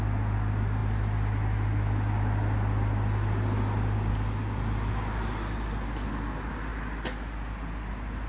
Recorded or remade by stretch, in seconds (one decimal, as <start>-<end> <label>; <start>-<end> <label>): 0.0-8.3 recorded